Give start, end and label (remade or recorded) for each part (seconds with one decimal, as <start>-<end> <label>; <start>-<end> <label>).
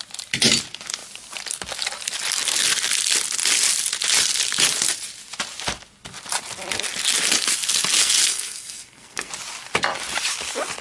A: 0.0-8.0 recorded; 8.0-9.3 remade; 9.3-10.8 recorded